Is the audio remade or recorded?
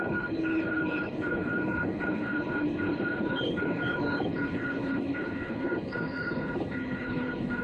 remade